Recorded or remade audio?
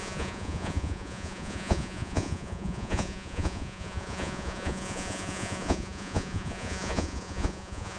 remade